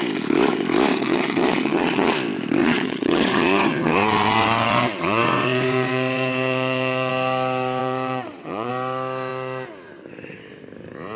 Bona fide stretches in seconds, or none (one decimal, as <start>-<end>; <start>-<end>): 0.0-0.9; 2.1-2.6; 7.1-7.8; 8.7-11.2